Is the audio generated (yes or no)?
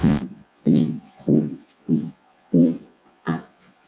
yes